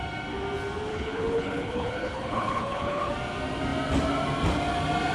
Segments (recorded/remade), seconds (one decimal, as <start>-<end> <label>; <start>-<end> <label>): 0.0-0.9 recorded; 0.9-3.1 remade; 3.1-5.1 recorded